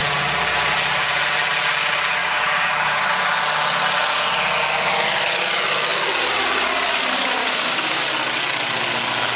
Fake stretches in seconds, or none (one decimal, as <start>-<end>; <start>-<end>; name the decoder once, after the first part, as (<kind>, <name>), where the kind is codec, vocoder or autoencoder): 2.2-3.1 (codec, DAC); 7.4-8.0